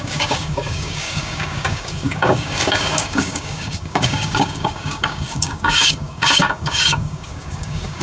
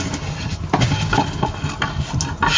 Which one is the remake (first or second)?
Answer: first